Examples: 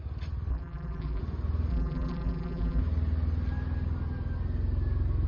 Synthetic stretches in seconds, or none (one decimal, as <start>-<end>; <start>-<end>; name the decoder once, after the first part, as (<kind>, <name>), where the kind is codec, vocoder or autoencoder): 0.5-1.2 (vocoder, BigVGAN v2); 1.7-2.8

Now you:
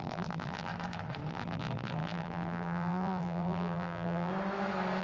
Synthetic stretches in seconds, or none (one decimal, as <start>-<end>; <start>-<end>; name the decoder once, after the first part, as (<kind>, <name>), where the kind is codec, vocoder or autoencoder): 0.0-0.7 (vocoder, BigVGAN v2); 1.3-4.3

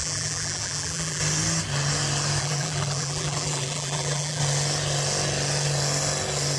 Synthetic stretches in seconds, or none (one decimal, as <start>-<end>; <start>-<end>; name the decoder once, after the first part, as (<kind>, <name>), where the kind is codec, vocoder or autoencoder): 0.0-1.2 (vocoder, BigVGAN v2); 2.4-4.4